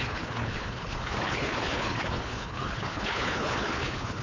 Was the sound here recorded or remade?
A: remade